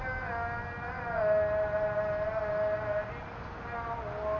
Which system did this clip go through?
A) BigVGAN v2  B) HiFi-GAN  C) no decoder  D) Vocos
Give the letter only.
C